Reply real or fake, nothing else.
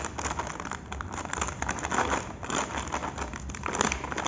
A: real